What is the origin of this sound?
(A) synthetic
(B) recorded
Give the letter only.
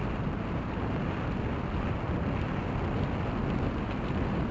B